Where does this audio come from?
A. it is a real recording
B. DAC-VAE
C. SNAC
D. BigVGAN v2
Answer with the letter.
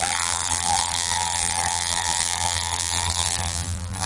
D